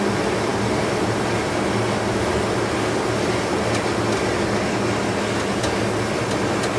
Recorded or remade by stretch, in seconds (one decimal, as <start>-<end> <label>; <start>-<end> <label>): 0.0-6.8 recorded